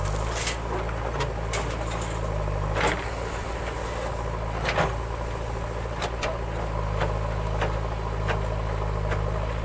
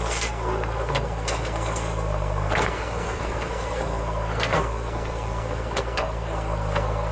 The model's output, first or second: second